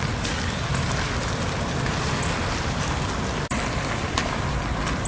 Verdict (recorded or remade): recorded